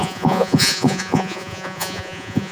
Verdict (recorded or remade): remade